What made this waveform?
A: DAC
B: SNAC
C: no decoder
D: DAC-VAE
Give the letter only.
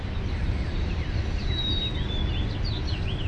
C